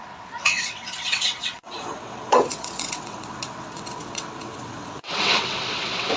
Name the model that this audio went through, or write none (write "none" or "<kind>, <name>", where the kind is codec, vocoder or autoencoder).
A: vocoder, WaveNeXt